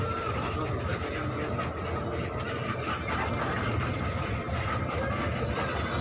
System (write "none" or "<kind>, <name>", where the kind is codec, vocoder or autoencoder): none